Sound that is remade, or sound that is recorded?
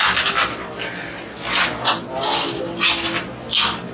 recorded